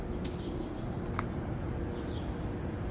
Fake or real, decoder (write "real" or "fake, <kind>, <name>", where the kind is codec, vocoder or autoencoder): real